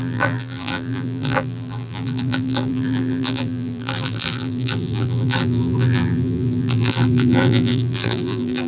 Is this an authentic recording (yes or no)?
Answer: no